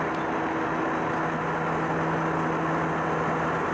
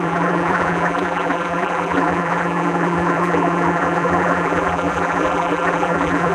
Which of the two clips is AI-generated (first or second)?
second